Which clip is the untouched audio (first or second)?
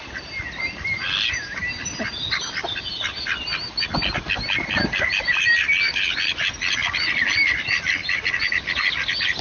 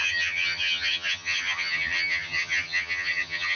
first